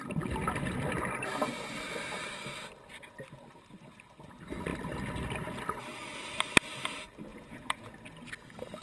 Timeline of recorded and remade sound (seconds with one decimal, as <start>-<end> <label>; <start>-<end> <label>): 0.0-7.3 recorded; 7.3-7.9 remade; 7.9-8.8 recorded